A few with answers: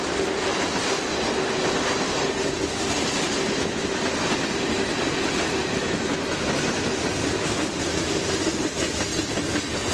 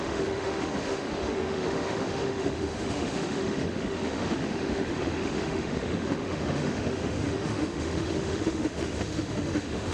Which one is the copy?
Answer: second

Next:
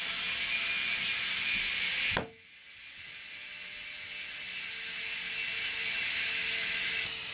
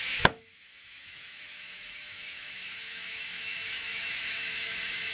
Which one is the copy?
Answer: second